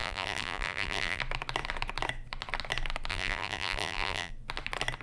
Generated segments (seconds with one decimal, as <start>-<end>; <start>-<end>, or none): 0.0-1.2; 3.1-4.3